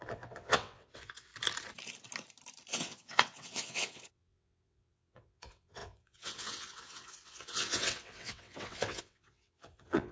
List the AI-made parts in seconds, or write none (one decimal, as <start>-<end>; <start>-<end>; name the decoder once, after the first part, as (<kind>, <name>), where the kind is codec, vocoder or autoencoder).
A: 0.0-1.3 (vocoder, WaveNeXt); 2.7-10.1